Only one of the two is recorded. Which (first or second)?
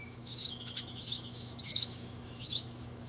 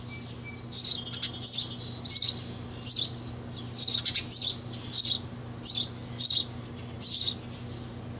second